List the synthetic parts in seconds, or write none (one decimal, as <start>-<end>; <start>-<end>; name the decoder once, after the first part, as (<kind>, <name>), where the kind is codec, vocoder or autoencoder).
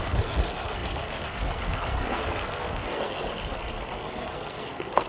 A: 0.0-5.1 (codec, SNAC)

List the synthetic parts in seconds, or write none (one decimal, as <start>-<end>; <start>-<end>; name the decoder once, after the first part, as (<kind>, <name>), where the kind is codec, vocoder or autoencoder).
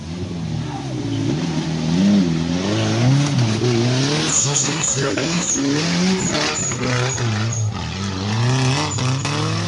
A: 4.3-5.5 (codec, SNAC)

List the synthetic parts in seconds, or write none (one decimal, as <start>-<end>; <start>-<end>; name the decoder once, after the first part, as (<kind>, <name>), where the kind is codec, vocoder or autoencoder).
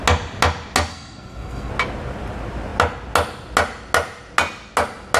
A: 0.9-1.7 (codec, SNAC)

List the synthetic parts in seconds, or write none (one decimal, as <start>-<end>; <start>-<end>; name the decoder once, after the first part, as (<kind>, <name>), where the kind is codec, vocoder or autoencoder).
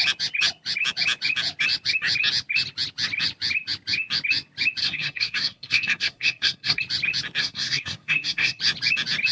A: 4.8-6.8 (codec, SNAC); 7.4-8.6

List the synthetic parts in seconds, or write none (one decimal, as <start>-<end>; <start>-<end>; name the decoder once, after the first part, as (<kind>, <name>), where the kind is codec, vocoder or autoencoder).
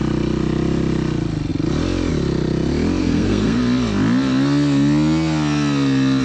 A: 3.0-3.6 (codec, SNAC)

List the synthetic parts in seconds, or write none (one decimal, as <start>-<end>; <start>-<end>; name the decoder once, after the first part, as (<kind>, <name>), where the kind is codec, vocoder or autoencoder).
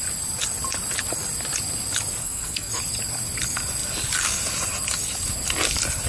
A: 2.2-2.7 (codec, SNAC)